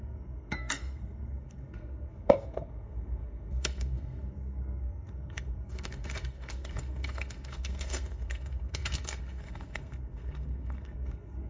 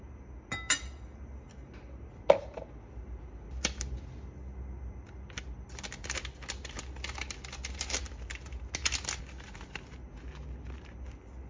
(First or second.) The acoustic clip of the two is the second